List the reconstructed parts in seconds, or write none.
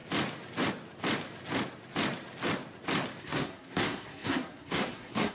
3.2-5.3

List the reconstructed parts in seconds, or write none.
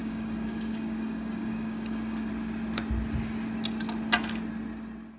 0.0-2.3